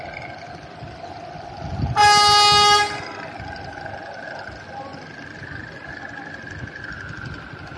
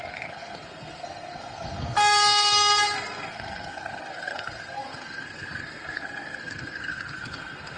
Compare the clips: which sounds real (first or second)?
first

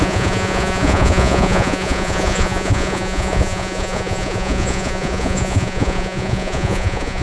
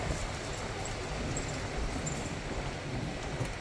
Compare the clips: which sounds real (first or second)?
second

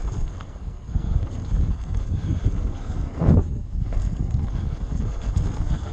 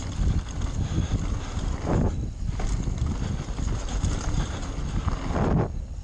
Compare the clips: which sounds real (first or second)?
second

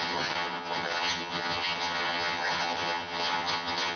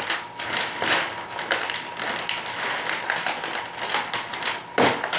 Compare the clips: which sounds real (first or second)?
second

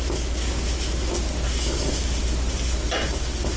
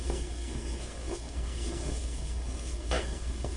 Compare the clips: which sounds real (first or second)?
first